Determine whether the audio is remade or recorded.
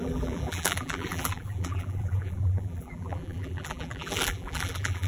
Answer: remade